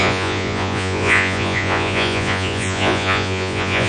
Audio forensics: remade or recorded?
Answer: remade